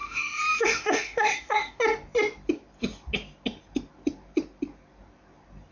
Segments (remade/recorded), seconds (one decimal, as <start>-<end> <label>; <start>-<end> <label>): 0.0-1.8 remade; 1.8-5.7 recorded